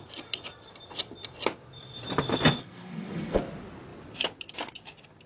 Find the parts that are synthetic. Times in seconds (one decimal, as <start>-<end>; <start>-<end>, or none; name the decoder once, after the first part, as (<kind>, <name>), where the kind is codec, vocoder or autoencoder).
2.6-3.4 (codec, SNAC)